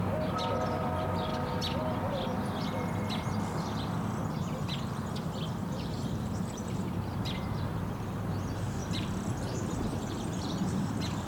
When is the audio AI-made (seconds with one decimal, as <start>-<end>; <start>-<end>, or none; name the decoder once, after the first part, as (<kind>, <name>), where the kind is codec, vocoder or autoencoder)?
0.0-1.3 (vocoder, BigVGAN v2); 5.5-11.3